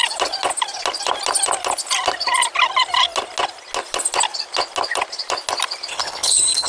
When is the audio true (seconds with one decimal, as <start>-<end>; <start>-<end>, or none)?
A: 0.0-5.9